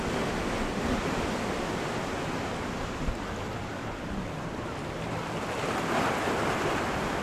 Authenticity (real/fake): real